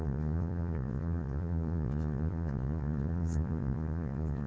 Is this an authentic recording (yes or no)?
no